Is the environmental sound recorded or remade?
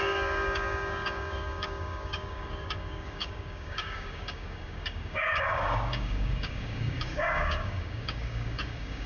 remade